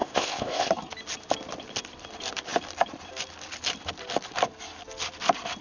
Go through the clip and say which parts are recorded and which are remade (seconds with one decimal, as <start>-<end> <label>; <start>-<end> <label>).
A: 0.0-0.7 remade; 0.7-5.6 recorded

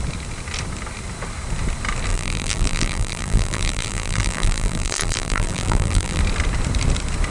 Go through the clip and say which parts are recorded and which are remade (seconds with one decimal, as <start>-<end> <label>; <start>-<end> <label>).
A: 0.0-2.1 recorded; 2.1-6.2 remade; 6.2-7.3 recorded

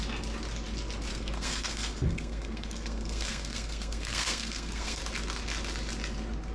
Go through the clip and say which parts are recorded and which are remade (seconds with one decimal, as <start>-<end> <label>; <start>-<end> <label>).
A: 0.0-1.1 recorded; 1.1-5.0 remade; 5.0-6.5 recorded